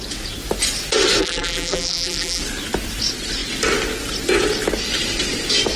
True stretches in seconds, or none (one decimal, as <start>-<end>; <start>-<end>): 0.0-1.2; 2.4-5.8